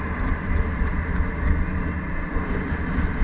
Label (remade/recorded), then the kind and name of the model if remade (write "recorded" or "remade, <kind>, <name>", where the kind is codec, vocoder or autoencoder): recorded